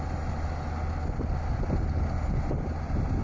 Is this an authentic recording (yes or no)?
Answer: yes